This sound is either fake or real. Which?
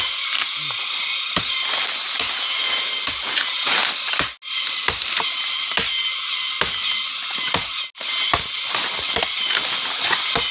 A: real